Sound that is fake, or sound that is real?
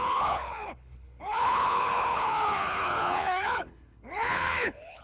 fake